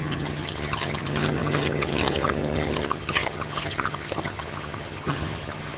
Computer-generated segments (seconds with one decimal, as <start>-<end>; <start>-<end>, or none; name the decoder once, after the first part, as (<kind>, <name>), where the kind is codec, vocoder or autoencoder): 0.0-5.8 (vocoder, HiFi-GAN)